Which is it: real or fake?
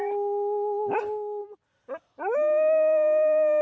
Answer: real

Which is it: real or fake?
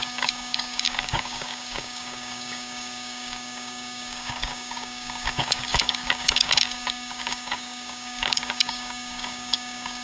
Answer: fake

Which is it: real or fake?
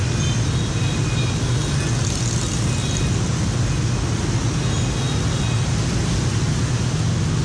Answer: real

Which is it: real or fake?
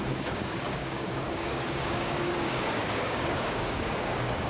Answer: fake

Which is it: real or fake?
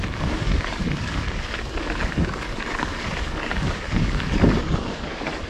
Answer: fake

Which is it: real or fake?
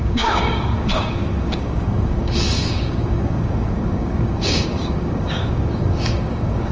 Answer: fake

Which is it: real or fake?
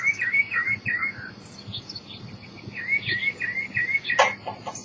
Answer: real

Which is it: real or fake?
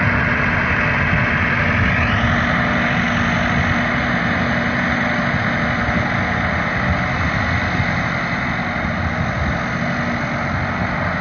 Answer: real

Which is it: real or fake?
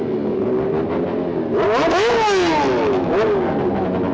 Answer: real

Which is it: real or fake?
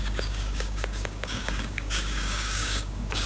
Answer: fake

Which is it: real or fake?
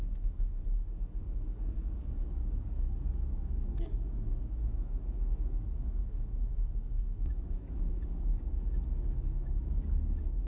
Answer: fake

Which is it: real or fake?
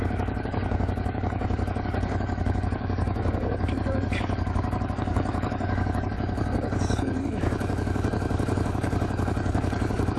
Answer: fake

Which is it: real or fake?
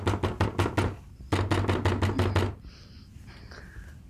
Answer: real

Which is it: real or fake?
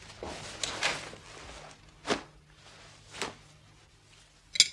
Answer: real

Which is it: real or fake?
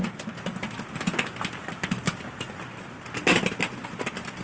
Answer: real